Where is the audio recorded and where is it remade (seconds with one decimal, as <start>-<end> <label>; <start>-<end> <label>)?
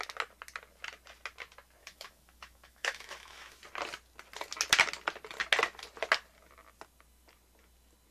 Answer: 0.0-1.8 recorded; 1.8-3.6 remade; 3.6-8.1 recorded